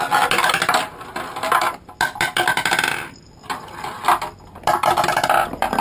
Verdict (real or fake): real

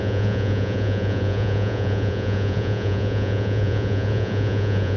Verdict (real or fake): fake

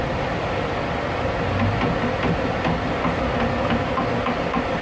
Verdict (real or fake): real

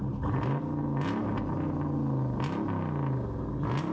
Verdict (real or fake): real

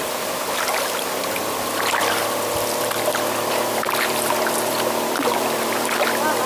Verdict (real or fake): real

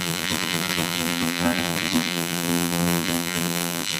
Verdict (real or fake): fake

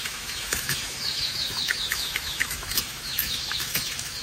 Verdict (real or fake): fake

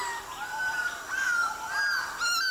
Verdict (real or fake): real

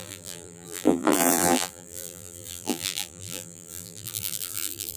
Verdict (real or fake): fake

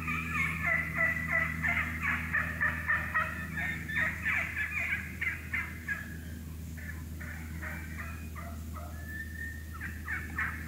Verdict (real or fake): real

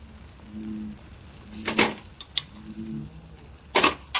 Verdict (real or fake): real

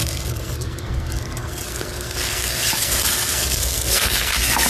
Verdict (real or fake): fake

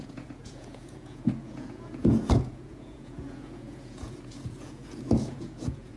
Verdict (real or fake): fake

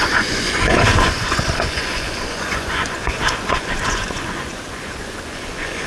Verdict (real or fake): fake